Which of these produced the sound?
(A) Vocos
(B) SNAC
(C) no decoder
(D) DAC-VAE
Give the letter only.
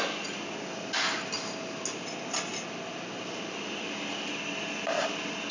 C